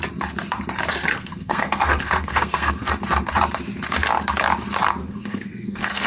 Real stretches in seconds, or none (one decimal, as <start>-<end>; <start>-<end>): 0.0-1.1; 2.9-5.0